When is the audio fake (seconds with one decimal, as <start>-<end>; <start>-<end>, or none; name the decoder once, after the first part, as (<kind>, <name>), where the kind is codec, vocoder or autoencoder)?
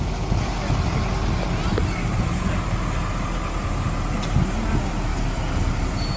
1.6-2.5 (vocoder, BigVGAN v2)